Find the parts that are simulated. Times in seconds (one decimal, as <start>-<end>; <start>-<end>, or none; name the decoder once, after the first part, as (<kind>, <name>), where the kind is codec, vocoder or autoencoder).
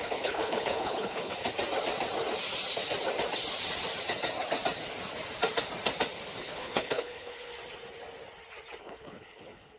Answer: 0.0-1.4 (codec, HILCodec); 6.4-7.5; 8.8-9.8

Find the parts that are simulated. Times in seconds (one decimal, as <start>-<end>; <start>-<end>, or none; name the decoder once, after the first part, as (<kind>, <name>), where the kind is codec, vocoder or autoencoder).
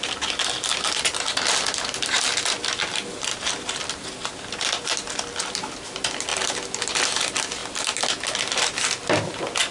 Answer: none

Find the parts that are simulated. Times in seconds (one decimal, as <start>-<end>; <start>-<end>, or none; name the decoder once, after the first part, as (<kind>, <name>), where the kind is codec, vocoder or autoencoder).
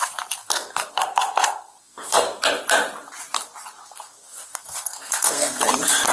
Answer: 0.4-2.4 (codec, SNAC); 3.8-5.6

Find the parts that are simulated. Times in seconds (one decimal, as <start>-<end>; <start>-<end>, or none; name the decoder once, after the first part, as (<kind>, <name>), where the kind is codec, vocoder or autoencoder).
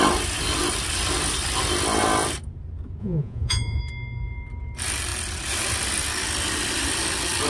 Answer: 3.0-3.8 (vocoder, Vocos)